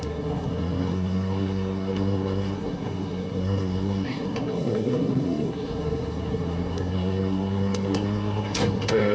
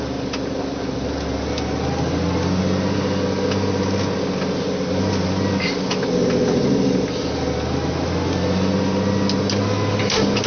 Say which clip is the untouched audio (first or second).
second